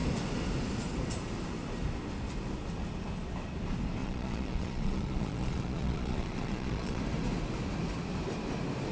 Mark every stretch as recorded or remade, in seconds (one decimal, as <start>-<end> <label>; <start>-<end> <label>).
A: 0.0-4.0 recorded; 4.0-7.0 remade; 7.0-8.9 recorded